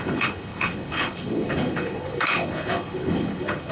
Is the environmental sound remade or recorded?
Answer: remade